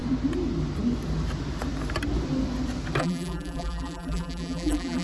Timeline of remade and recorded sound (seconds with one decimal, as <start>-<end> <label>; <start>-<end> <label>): 0.0-3.0 recorded; 3.0-5.0 remade